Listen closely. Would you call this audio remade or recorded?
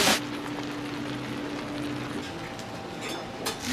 recorded